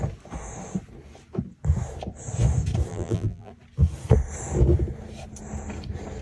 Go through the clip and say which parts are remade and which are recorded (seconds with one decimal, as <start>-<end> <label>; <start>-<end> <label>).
0.0-2.9 recorded; 2.9-3.5 remade; 3.5-6.2 recorded